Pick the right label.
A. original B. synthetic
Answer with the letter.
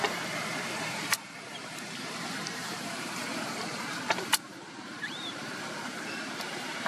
B